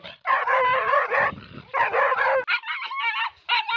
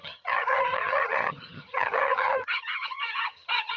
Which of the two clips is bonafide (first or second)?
first